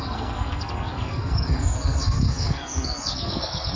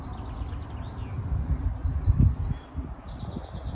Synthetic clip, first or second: first